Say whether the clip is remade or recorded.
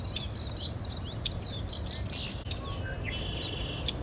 recorded